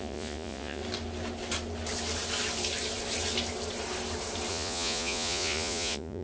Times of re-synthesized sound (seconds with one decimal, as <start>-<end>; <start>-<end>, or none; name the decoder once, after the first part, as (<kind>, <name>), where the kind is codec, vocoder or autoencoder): 0.0-0.8 (vocoder, Vocos); 4.5-6.2